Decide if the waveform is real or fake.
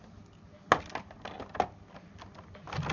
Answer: real